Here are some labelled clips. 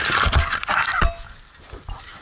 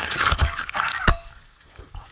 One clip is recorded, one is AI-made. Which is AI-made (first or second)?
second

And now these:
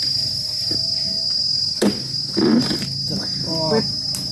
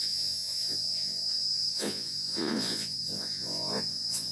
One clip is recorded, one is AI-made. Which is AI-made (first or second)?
second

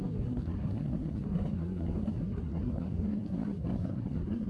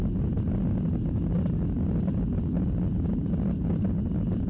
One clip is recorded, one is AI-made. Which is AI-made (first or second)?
first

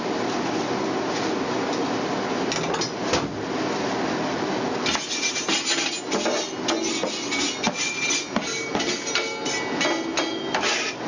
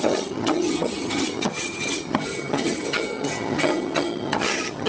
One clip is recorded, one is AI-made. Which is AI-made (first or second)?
second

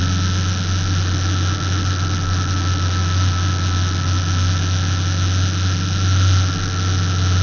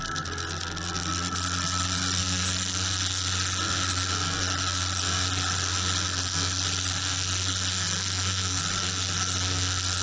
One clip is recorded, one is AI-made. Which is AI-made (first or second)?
second